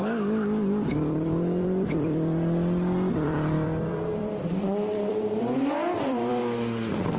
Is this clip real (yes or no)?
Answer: no